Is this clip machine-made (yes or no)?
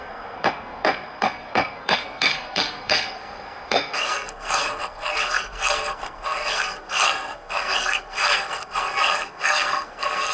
yes